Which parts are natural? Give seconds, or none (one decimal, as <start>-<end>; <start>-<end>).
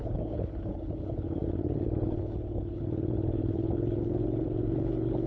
none